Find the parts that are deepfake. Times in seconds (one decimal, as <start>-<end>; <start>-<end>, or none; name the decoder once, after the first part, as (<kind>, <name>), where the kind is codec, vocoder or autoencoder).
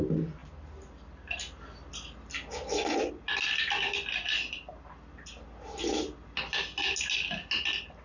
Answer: none